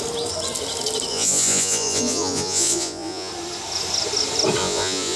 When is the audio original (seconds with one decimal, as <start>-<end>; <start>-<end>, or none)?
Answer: 0.0-1.1; 3.3-4.6

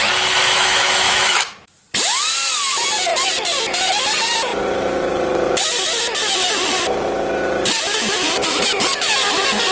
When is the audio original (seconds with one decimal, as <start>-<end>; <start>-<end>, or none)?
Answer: 0.0-0.4; 1.8-9.7

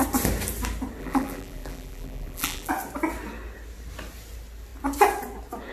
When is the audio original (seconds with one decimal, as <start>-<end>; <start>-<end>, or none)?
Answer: 0.0-1.0; 2.7-5.7

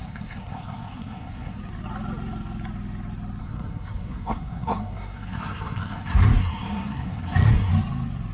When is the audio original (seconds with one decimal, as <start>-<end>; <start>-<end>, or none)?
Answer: 1.6-3.4; 7.7-8.3

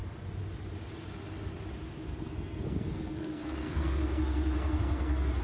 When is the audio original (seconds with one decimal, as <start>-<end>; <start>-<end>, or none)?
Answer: 0.0-2.1

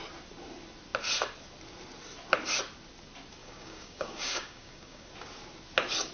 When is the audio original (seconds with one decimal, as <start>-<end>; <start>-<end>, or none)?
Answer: 0.0-3.4; 5.1-6.1